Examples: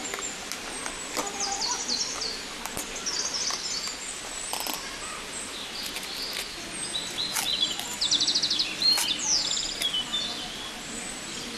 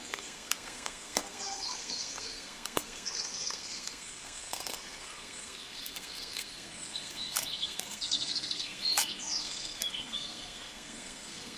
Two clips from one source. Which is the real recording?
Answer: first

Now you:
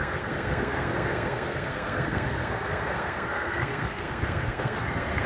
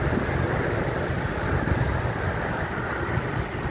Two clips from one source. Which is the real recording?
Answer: second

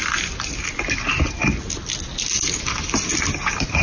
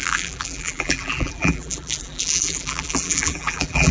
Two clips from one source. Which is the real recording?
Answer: first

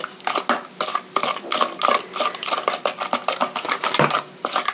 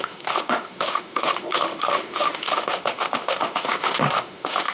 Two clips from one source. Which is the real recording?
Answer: first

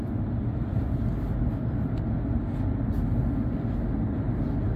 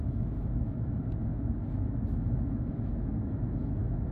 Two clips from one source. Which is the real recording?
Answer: first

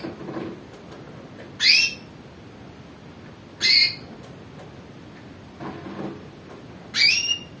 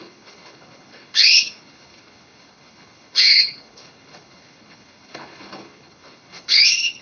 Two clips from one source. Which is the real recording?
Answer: first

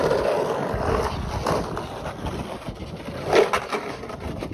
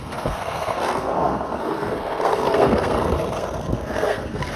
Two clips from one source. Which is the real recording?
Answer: first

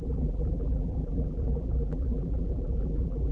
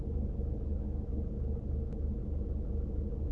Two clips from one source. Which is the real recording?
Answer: second